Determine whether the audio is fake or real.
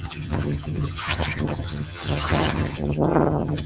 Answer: fake